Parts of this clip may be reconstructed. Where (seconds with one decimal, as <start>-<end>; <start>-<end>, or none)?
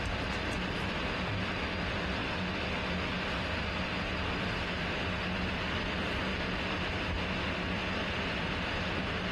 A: 0.0-2.2; 3.3-6.3; 6.9-7.8; 8.3-9.3